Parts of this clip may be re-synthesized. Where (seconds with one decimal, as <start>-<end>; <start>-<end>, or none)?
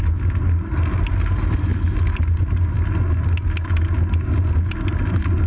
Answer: none